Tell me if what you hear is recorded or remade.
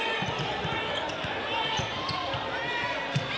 remade